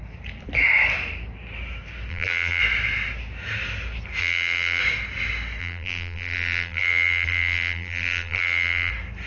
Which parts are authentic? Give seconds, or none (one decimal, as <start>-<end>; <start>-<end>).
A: 0.0-2.1; 2.6-4.2; 4.8-5.6; 8.9-9.3